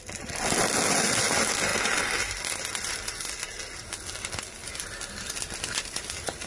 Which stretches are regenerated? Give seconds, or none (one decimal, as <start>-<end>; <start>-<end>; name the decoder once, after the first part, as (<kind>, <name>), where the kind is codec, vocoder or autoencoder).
1.7-3.3 (vocoder, BigVGAN v2); 4.6-6.5